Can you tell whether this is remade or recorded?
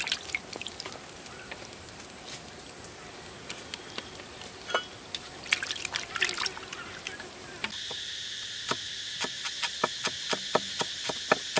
recorded